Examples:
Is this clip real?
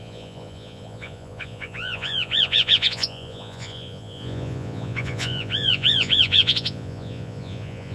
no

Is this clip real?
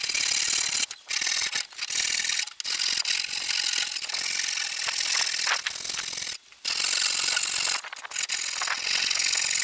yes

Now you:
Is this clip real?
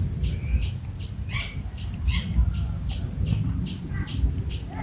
yes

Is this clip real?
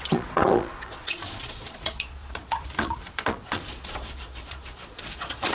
no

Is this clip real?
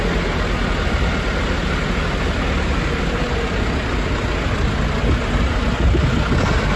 yes